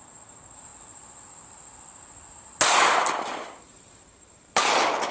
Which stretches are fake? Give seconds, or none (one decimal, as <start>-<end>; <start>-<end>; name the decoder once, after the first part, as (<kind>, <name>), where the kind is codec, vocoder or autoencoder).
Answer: none